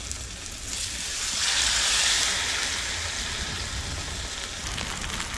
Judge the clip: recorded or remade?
recorded